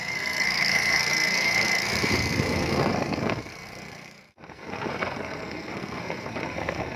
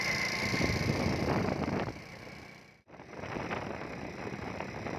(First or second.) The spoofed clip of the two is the first